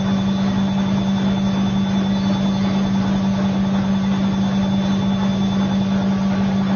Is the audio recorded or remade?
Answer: recorded